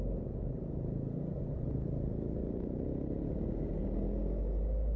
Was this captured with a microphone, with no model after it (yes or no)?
yes